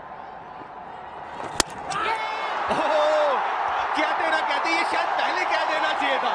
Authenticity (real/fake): real